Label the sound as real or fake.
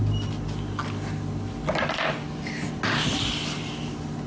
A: real